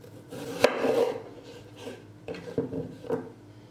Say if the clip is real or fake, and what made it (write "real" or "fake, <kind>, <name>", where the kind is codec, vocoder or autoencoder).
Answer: fake, vocoder, BigVGAN v2